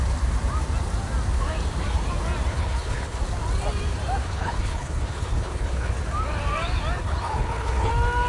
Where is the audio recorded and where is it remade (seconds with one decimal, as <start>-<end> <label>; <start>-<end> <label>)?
0.0-2.5 recorded; 2.5-3.2 remade; 3.2-4.2 recorded; 4.2-5.9 remade; 5.9-7.0 recorded; 7.0-7.9 remade; 7.9-8.3 recorded